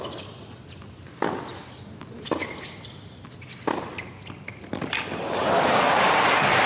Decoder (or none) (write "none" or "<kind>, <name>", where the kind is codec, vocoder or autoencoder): none